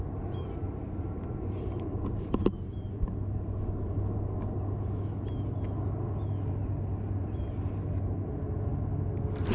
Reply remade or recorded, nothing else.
recorded